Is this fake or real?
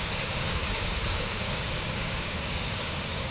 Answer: fake